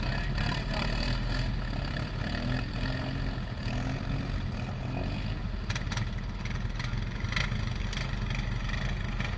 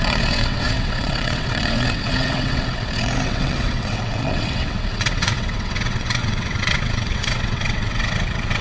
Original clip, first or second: first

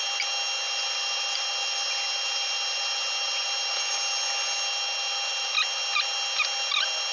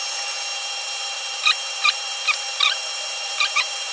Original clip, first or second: first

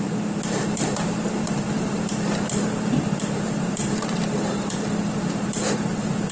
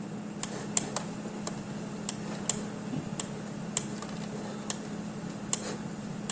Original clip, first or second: second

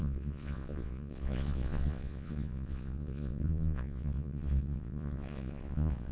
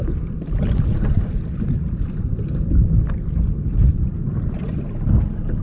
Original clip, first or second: second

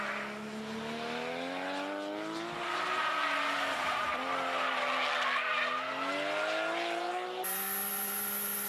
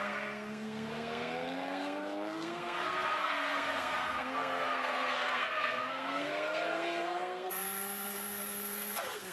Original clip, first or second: first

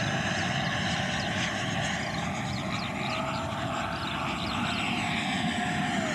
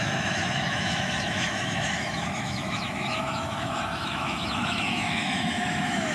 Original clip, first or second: first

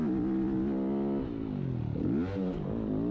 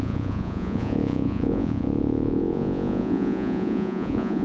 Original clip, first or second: first